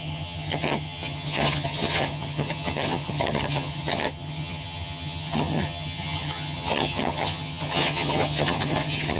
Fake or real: fake